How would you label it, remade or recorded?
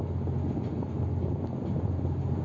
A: recorded